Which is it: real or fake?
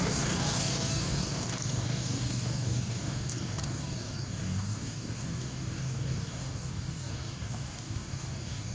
fake